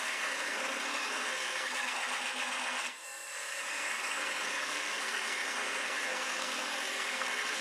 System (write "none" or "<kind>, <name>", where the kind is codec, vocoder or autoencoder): codec, SNAC